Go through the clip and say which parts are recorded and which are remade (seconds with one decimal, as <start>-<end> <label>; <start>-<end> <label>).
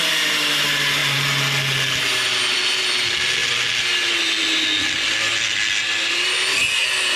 0.0-7.2 recorded